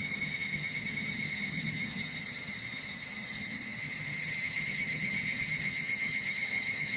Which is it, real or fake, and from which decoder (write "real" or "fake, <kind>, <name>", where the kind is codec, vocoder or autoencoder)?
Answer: fake, vocoder, HiFi-GAN